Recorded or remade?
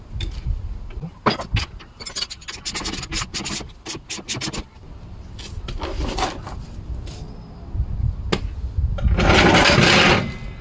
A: recorded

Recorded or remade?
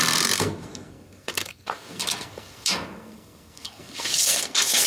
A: remade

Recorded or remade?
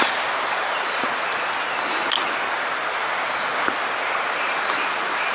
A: recorded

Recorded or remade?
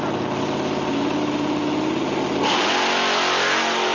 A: recorded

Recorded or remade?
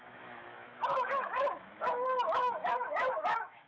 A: remade